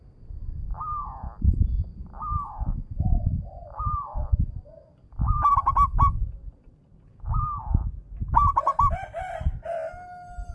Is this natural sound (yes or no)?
yes